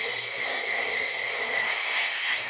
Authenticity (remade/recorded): remade